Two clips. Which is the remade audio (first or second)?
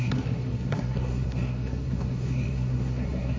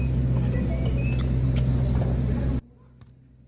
first